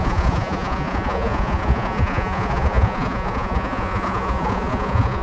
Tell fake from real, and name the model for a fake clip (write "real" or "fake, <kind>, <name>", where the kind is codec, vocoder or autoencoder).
fake, vocoder, Vocos